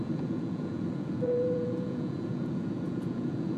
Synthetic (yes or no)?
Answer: yes